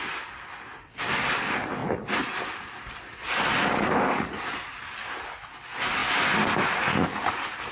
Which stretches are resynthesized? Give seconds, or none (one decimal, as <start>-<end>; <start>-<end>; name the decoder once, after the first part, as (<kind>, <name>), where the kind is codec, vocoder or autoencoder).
none